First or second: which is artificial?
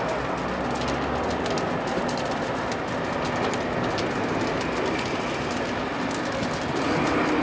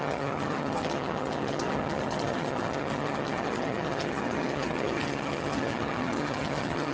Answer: second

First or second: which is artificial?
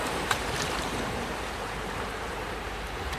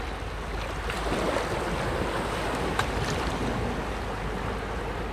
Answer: first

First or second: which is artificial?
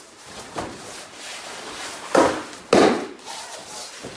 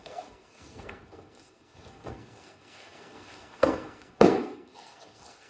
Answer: second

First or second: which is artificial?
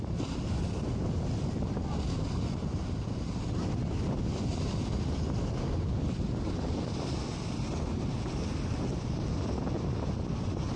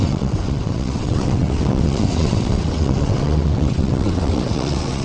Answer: second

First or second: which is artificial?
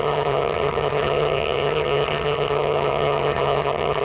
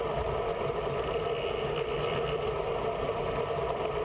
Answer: first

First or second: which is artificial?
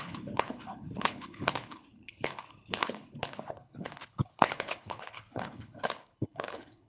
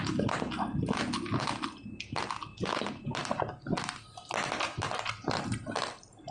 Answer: first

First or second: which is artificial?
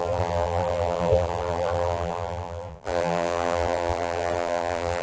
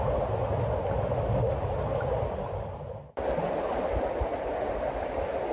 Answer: first